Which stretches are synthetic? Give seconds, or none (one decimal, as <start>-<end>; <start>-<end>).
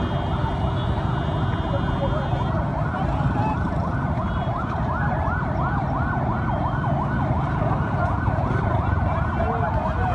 2.7-5.4